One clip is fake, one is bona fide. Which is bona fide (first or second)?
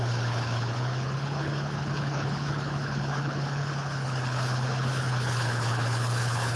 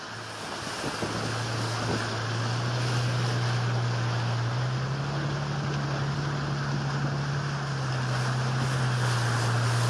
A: second